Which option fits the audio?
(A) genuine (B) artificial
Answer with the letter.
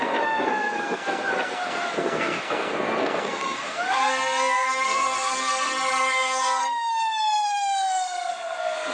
B